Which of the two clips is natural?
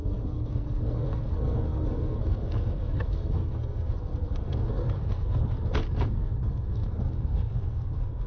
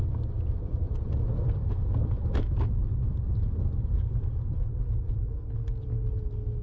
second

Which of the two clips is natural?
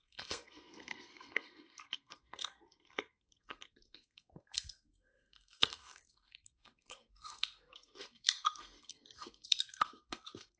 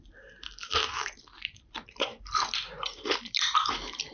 second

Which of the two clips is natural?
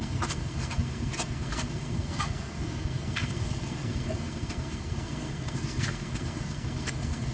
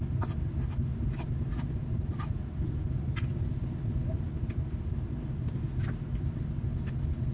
second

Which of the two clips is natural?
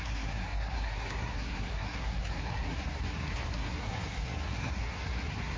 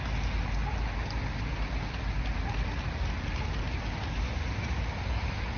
second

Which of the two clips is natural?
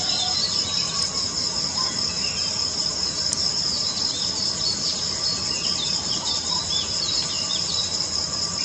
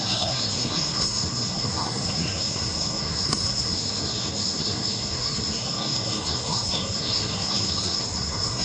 first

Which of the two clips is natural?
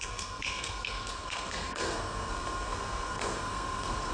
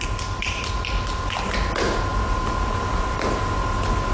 second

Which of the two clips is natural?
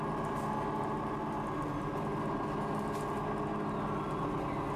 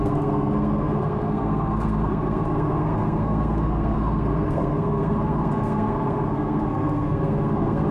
first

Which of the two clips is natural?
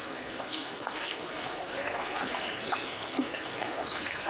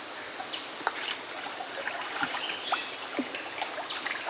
second